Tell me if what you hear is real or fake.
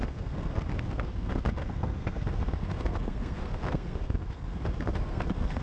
fake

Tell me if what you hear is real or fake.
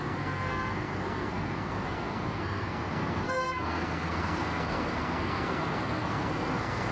fake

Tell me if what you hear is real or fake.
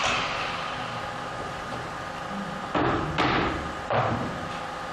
real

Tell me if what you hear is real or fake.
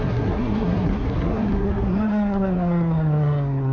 fake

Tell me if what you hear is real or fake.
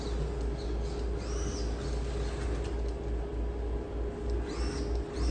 real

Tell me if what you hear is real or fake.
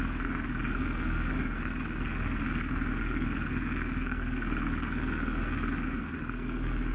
fake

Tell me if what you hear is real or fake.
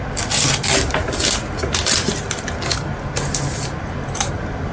real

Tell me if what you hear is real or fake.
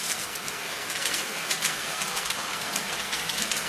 fake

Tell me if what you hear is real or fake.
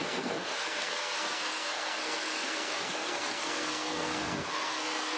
fake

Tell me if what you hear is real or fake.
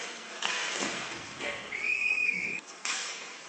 fake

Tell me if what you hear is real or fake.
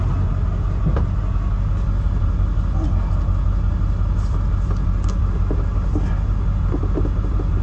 real